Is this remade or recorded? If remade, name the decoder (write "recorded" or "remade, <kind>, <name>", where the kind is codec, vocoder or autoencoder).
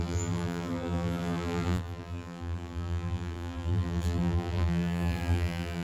remade, vocoder, BigVGAN v2